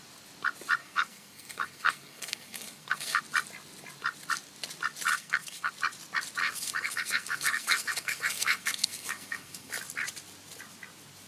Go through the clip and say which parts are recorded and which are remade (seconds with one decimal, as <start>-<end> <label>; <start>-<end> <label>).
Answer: 0.0-0.8 recorded; 0.8-3.2 remade; 3.2-5.1 recorded; 5.1-5.7 remade; 5.7-6.4 recorded; 6.4-9.7 remade; 9.7-11.3 recorded